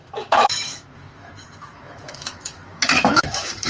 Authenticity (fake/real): fake